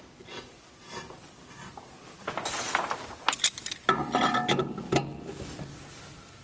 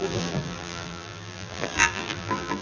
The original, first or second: first